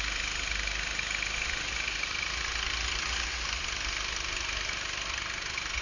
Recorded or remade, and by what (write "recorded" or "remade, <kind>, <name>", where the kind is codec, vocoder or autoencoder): recorded